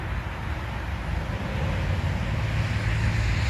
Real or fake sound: real